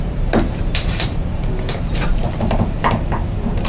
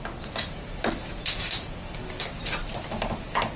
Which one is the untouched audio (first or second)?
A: second